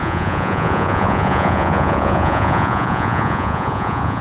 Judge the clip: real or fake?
fake